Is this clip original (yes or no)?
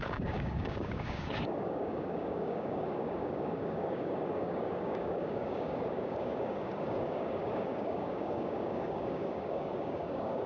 no